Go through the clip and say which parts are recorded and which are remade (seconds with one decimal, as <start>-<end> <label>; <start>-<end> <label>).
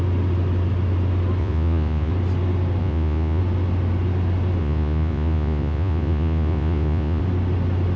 0.0-1.4 recorded; 1.4-2.1 remade; 2.1-2.8 recorded; 2.8-3.4 remade; 3.4-4.6 recorded; 4.6-7.2 remade; 7.2-8.0 recorded